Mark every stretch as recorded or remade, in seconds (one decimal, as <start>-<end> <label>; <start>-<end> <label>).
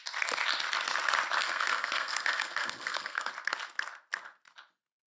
0.0-1.4 recorded; 1.4-3.3 remade; 3.3-5.2 recorded